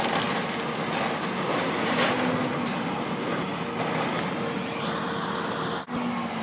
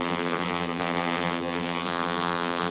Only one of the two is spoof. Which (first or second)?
second